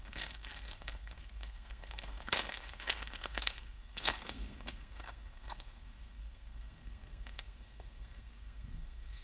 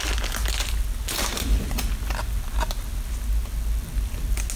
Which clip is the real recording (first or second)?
second